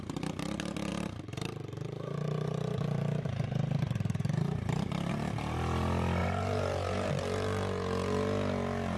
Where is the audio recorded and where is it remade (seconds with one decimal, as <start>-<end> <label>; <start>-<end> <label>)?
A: 0.0-0.9 recorded; 0.9-5.1 remade; 5.1-6.2 recorded; 6.2-7.1 remade; 7.1-9.0 recorded